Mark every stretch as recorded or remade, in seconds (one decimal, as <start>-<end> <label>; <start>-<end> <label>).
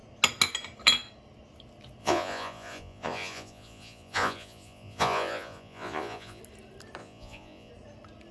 0.0-2.0 recorded; 2.0-6.4 remade; 6.4-7.0 recorded; 7.0-7.7 remade; 7.7-8.3 recorded